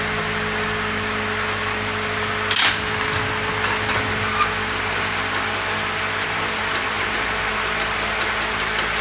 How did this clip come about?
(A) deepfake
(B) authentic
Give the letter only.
B